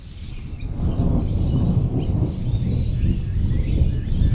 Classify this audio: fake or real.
real